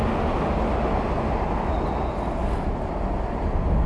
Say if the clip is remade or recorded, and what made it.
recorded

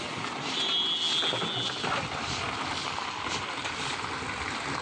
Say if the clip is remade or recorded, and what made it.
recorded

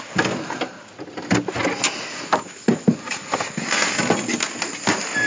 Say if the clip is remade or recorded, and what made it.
recorded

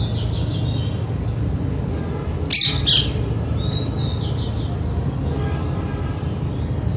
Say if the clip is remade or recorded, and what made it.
recorded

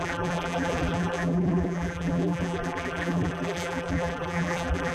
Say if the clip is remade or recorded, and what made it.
remade, vocoder, BigVGAN v2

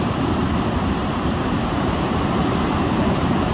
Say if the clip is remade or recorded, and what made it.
remade, vocoder, BigVGAN v2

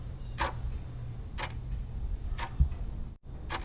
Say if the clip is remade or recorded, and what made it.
recorded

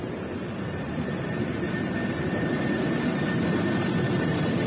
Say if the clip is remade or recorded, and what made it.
remade, vocoder, BigVGAN v2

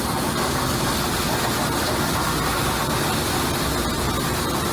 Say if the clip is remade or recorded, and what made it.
recorded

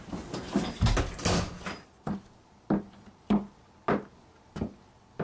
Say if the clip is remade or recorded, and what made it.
recorded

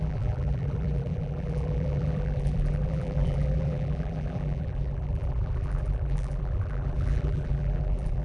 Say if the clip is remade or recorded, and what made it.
remade, vocoder, BigVGAN v2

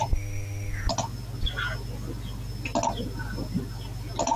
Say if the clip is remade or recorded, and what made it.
recorded